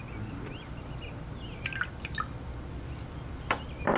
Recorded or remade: recorded